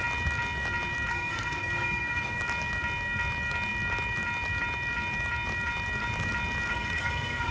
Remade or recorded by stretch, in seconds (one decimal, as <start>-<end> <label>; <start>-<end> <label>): 0.0-1.1 recorded; 1.1-2.4 remade; 2.4-6.7 recorded; 6.7-7.5 remade